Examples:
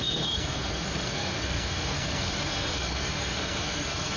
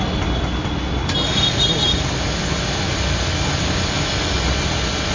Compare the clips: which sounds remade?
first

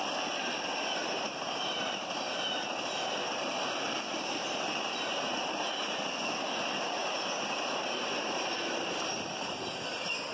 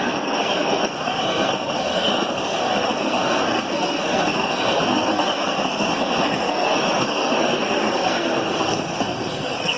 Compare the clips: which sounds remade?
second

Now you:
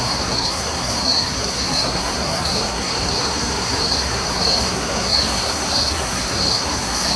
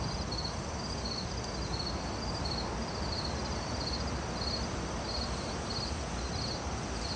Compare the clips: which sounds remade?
first